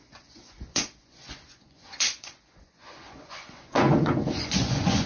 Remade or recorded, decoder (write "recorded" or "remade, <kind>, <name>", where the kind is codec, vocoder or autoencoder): remade, vocoder, Vocos